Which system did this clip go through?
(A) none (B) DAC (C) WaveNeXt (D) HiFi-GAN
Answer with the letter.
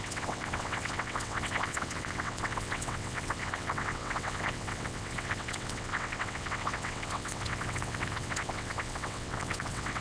C